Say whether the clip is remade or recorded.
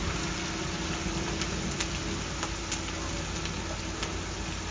recorded